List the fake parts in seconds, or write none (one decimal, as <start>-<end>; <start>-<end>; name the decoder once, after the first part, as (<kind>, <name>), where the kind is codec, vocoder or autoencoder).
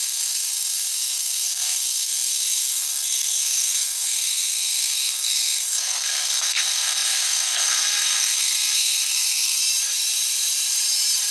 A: 0.0-9.6 (codec, SNAC)